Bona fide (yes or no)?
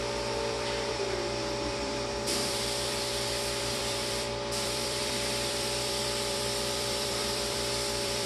no